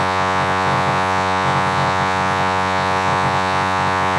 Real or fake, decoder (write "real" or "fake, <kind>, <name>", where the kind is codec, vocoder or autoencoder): fake, vocoder, Vocos